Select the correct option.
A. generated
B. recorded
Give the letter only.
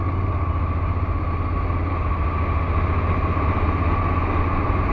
B